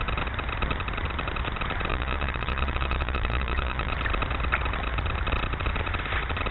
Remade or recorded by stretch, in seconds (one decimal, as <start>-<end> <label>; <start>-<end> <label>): 0.0-1.9 recorded; 1.9-3.9 remade; 3.9-6.5 recorded